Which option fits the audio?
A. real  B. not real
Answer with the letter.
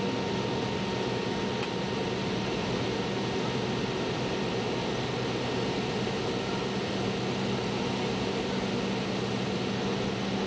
A